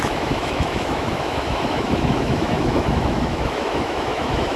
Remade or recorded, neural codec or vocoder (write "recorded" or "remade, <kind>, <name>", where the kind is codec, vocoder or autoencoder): remade, autoencoder, DAC-VAE